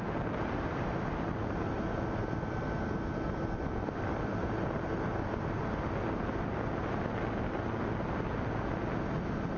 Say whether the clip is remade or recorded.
recorded